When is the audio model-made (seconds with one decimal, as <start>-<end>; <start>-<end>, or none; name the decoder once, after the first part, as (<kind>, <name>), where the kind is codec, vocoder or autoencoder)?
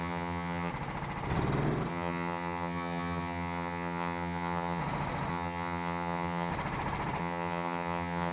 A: 0.0-0.7 (vocoder, HiFi-GAN); 1.9-4.8; 5.3-6.5; 7.2-8.3